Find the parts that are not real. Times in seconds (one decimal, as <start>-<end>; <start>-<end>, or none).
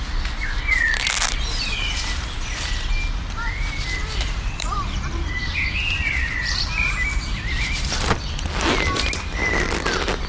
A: 4.0-5.4; 6.4-8.1